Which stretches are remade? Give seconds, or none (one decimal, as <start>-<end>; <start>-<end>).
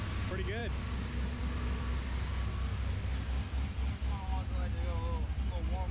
none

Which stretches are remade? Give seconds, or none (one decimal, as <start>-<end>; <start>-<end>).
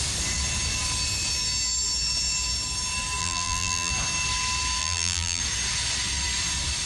3.2-3.9; 4.8-5.4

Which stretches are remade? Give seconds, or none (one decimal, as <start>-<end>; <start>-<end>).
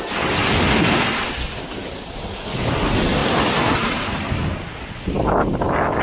none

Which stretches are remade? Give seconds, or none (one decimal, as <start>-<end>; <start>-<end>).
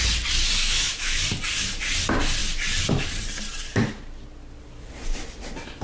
0.6-1.2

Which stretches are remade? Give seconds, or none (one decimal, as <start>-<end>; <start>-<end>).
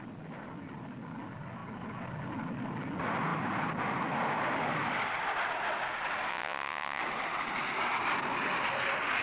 6.3-7.0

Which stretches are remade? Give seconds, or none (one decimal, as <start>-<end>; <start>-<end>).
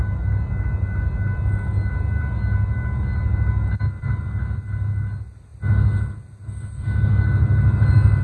none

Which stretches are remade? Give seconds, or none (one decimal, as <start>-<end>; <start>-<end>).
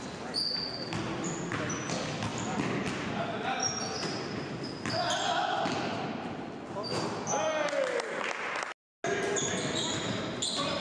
none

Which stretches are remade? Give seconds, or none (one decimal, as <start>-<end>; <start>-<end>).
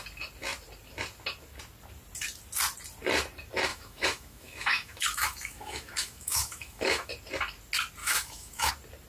3.7-7.1; 8.0-8.7